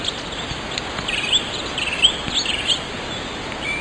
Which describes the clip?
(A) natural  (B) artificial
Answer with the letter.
A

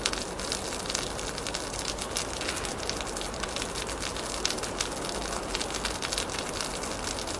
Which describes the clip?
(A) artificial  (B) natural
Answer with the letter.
B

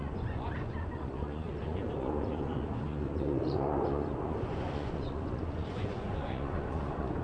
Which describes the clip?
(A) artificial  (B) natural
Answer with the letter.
A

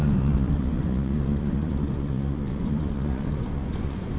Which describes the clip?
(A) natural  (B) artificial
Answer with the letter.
B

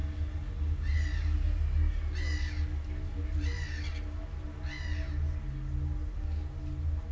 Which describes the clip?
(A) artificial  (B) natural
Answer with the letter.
B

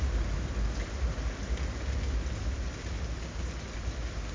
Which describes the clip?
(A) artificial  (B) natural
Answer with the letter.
B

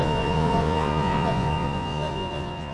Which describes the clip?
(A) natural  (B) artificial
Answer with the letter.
B